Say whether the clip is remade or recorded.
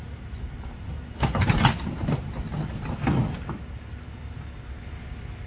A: recorded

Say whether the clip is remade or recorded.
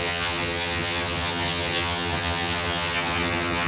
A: remade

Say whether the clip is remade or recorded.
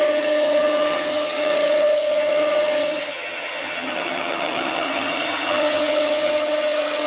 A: remade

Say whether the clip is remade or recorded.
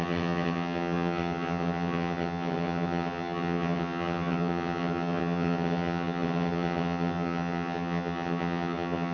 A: remade